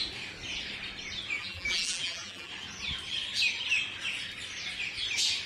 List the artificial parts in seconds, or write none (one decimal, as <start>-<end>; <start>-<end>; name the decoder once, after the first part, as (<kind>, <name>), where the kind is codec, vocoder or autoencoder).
1.4-2.5 (vocoder, BigVGAN v2)